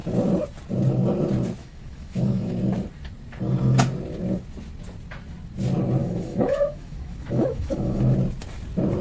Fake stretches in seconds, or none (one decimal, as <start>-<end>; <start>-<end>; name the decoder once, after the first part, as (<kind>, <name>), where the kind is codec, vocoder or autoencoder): 1.6-2.5 (autoencoder, DAC-VAE); 6.0-8.0